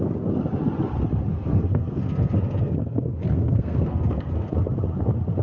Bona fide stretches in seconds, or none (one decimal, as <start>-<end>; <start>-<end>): 0.0-1.3; 4.5-5.4